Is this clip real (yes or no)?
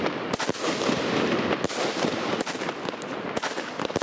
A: yes